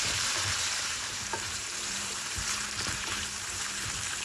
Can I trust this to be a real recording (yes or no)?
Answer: no